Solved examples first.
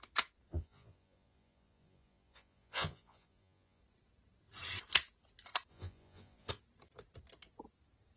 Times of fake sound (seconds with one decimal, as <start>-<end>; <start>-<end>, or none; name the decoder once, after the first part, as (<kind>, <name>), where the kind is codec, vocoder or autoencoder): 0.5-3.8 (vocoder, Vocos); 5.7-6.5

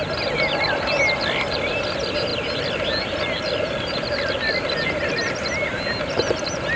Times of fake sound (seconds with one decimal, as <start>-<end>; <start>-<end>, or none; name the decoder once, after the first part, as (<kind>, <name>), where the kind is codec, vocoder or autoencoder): none

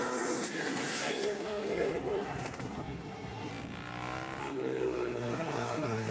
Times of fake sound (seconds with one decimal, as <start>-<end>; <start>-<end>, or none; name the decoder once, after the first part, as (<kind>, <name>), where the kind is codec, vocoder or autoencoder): 0.0-3.5 (codec, SNAC); 4.4-6.1

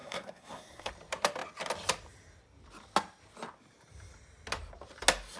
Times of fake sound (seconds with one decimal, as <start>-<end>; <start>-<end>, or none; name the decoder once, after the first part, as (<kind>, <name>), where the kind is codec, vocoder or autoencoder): 0.0-0.9 (codec, SNAC)